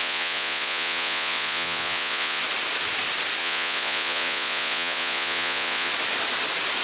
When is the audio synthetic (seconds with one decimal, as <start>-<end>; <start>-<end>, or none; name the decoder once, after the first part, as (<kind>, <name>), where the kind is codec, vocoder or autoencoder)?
0.0-2.4 (vocoder, Vocos); 3.4-5.9